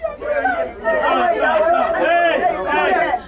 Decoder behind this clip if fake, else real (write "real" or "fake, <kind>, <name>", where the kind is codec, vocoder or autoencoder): real